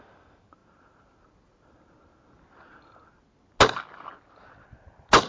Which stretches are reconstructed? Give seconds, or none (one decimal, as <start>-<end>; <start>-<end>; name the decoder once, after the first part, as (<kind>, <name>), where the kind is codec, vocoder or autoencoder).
none